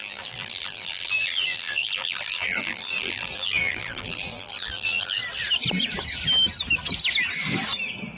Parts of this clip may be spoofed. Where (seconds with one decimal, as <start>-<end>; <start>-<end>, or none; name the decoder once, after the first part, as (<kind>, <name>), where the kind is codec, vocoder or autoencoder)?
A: 0.0-5.2 (vocoder, BigVGAN v2)